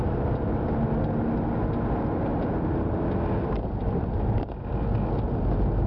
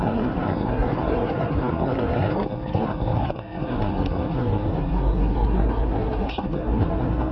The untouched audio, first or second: first